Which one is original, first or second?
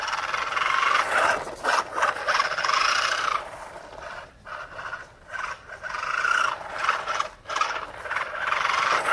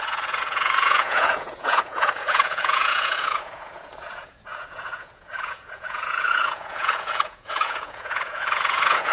first